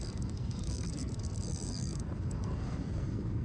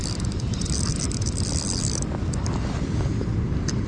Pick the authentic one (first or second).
second